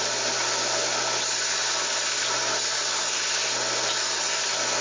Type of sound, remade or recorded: recorded